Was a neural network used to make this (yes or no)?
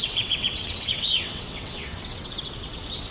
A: yes